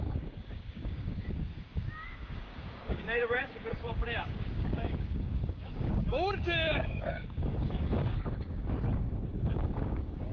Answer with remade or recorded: remade